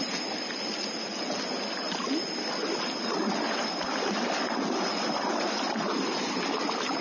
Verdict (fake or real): real